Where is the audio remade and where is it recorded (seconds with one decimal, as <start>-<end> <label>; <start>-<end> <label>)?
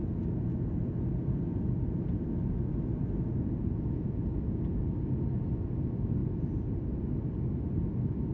0.0-8.3 recorded